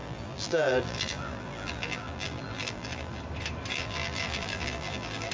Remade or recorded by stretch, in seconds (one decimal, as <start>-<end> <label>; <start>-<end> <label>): 0.0-3.2 remade; 3.2-3.7 recorded; 3.7-5.3 remade